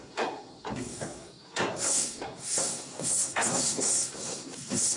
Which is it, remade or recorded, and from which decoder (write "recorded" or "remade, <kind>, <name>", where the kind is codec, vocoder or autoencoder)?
remade, codec, SNAC